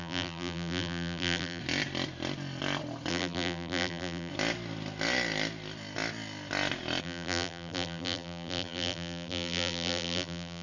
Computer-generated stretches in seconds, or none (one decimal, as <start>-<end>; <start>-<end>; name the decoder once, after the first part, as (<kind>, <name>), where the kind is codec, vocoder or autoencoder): 0.0-1.6 (vocoder, BigVGAN v2); 3.1-4.3; 7.0-10.6